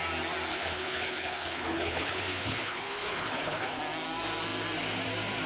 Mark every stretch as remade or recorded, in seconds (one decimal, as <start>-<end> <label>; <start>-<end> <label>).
0.0-0.5 recorded; 0.5-3.8 remade; 3.8-5.5 recorded